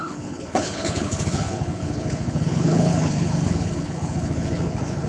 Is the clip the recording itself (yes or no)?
no